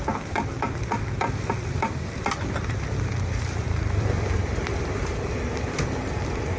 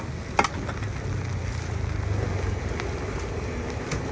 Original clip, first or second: second